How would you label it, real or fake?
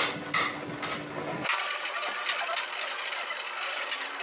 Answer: real